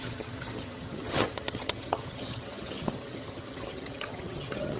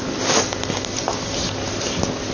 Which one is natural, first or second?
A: second